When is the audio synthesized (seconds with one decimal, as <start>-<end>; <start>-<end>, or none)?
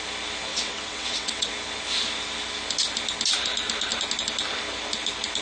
0.5-1.5